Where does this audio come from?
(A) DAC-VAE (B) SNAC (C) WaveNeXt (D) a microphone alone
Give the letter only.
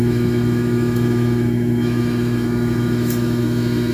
A